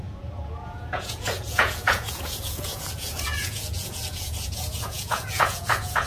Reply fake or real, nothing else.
fake